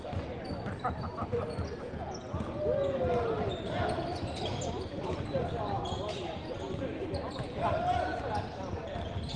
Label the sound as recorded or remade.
recorded